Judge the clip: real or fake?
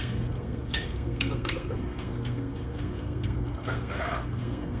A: fake